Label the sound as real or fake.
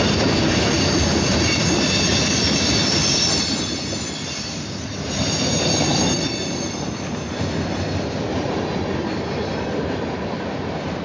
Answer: real